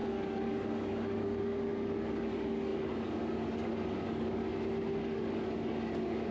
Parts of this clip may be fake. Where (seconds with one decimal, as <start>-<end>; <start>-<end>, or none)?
0.0-4.5; 5.0-6.3